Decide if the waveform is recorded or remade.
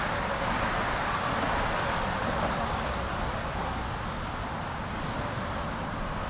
recorded